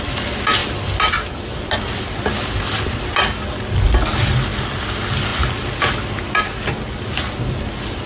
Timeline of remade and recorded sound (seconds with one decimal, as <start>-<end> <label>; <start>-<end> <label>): 0.0-8.1 recorded